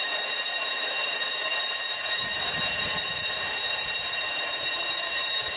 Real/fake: fake